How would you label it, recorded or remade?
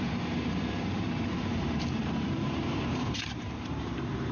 remade